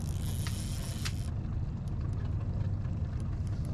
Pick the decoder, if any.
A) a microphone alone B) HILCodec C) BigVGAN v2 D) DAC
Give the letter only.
A